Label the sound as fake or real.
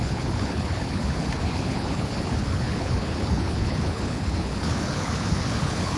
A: fake